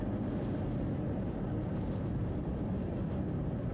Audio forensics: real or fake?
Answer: real